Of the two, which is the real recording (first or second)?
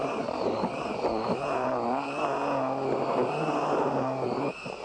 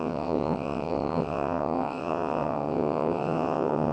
first